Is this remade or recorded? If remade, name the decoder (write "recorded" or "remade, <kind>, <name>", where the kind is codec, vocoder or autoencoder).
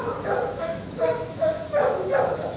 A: remade, autoencoder, DAC-VAE